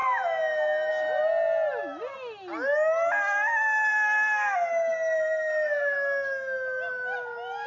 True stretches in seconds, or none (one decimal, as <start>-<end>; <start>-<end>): 0.0-7.7